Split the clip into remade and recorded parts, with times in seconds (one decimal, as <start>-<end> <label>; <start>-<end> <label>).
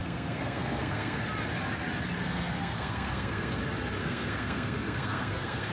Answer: 0.0-1.2 remade; 1.2-2.2 recorded; 2.2-3.6 remade; 3.6-4.0 recorded; 4.0-5.7 remade